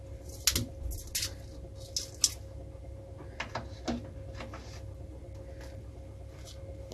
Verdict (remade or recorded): recorded